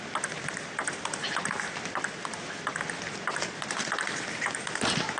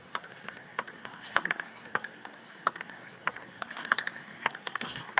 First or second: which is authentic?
first